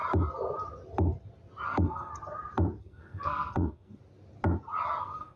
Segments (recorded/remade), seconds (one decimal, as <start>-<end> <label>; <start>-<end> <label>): 0.0-1.7 recorded; 1.7-2.1 remade; 2.1-2.8 recorded; 2.8-4.0 remade; 4.0-5.0 recorded; 5.0-5.4 remade